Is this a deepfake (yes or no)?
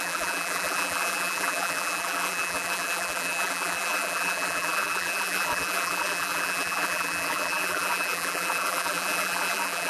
yes